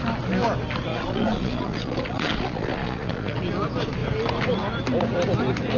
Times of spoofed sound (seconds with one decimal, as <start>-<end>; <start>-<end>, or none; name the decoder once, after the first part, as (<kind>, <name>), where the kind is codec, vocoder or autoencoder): 0.9-3.4 (vocoder, Vocos)